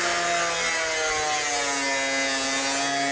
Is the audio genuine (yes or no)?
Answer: yes